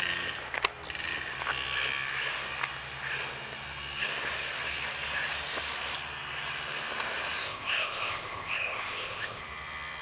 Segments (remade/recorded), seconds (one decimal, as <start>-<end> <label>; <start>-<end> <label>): 0.0-7.4 recorded; 7.4-9.4 remade; 9.4-10.0 recorded